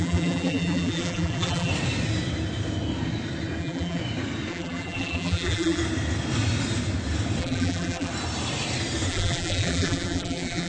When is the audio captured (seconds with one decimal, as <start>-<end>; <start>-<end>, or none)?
1.7-3.6; 4.0-4.5; 5.8-7.4; 8.1-9.1